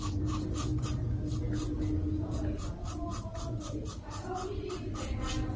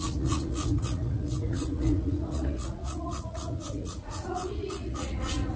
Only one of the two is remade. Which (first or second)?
second